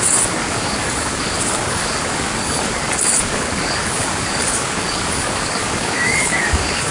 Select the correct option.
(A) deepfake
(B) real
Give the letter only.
A